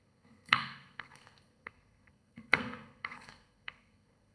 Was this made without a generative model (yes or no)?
no